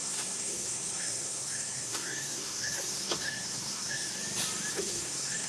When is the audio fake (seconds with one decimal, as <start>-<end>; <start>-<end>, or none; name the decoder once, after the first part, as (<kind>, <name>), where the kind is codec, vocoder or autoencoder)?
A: 0.0-4.2 (codec, SNAC); 4.7-5.5